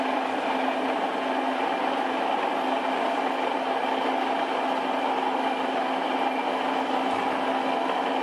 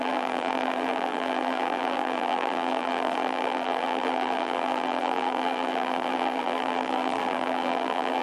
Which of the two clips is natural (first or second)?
first